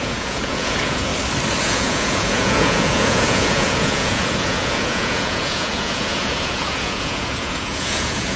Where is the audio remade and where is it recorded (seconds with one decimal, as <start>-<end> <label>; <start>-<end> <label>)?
0.0-1.1 remade; 1.1-1.6 recorded; 1.6-8.4 remade